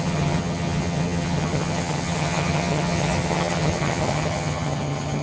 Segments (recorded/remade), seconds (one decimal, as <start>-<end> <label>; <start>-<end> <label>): 0.0-5.2 remade